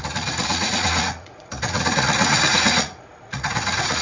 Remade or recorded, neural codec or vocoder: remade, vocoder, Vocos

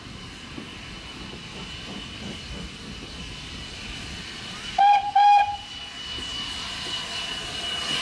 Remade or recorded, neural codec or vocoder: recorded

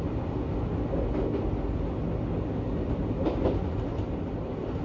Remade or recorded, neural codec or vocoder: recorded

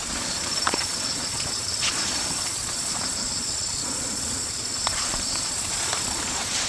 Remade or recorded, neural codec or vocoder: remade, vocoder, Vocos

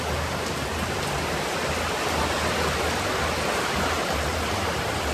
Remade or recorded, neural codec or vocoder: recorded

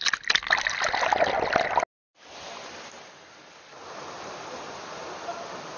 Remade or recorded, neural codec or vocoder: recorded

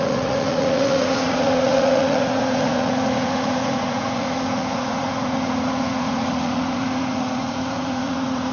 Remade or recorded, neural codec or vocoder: remade, vocoder, Vocos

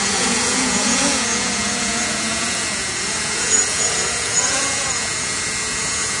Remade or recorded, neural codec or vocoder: remade, vocoder, Vocos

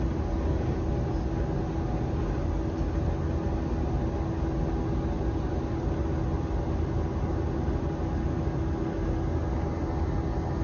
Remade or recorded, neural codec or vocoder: recorded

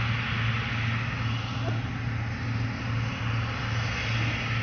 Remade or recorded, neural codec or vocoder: recorded